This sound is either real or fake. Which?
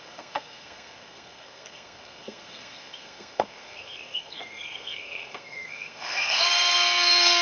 fake